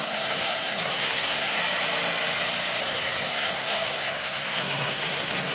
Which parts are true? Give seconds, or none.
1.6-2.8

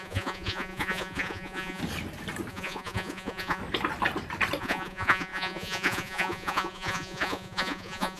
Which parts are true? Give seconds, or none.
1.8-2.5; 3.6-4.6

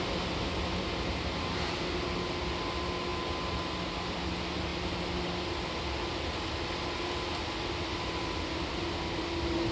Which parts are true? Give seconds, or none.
0.0-9.7

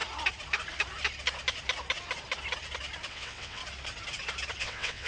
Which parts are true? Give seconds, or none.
0.0-3.1; 3.6-4.6

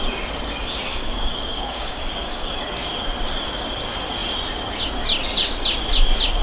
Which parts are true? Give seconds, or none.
0.0-0.9; 2.5-6.4

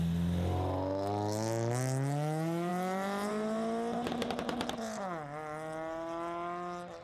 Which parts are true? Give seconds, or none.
0.0-7.0

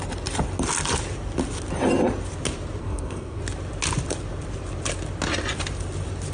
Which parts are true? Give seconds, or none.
0.0-2.8; 3.4-6.3

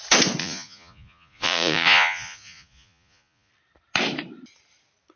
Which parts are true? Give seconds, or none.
0.0-0.4; 3.5-5.2